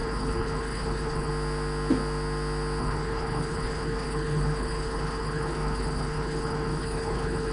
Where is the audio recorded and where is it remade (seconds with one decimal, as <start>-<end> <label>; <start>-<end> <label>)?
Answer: 0.0-1.3 remade; 1.3-2.8 recorded; 2.8-7.5 remade